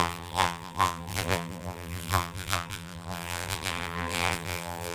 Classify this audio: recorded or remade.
remade